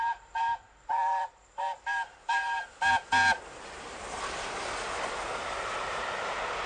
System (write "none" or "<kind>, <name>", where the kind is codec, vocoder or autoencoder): vocoder, BigVGAN v2